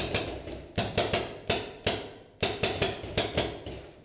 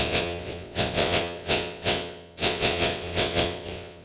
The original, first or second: first